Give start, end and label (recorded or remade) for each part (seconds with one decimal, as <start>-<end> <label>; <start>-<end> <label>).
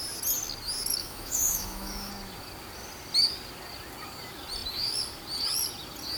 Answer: 0.0-1.0 recorded; 1.0-2.1 remade; 2.1-6.2 recorded